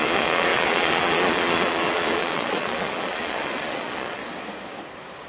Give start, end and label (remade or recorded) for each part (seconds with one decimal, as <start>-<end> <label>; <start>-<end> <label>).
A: 0.0-4.2 remade; 4.2-5.3 recorded